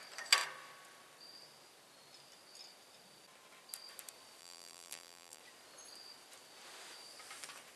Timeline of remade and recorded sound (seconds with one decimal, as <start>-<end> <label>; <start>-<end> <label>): 0.0-4.4 recorded; 4.4-5.4 remade; 5.4-7.8 recorded